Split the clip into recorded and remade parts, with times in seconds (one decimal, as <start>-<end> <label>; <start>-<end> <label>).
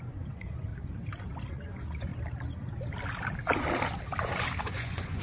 0.0-0.7 remade; 0.7-1.5 recorded; 1.5-2.1 remade; 2.1-4.6 recorded; 4.6-5.2 remade